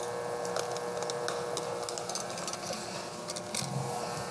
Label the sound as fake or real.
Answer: real